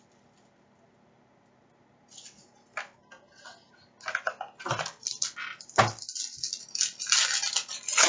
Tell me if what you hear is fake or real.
real